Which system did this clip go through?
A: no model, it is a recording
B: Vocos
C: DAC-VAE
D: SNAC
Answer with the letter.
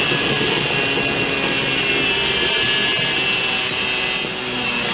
A